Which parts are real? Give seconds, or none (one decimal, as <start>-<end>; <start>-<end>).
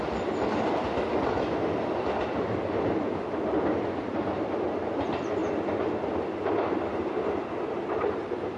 0.0-8.6